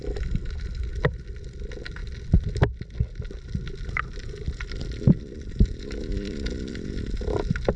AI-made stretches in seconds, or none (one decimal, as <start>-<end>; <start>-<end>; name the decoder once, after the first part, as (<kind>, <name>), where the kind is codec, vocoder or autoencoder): none